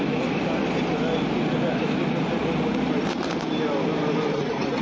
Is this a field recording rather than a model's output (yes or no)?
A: yes